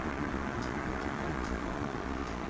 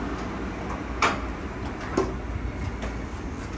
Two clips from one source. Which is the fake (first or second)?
first